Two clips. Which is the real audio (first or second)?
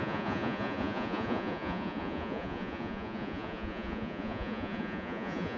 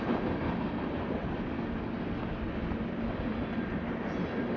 second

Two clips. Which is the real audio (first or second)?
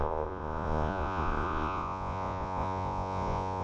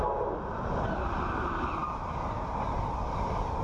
second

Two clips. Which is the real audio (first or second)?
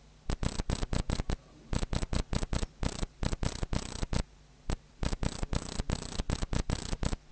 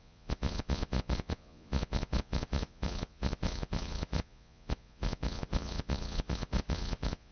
first